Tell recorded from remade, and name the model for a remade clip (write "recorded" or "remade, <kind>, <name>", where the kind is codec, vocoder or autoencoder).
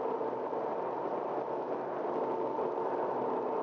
recorded